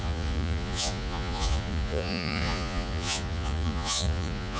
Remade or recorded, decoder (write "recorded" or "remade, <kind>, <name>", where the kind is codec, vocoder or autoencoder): remade, vocoder, Vocos